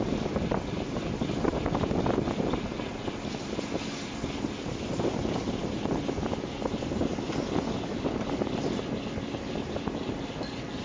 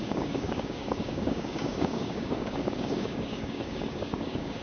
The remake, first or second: second